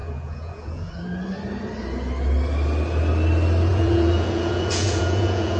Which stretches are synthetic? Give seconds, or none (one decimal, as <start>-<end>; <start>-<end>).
0.0-0.9; 3.7-5.6